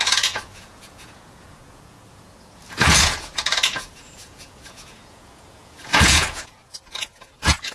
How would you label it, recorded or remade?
remade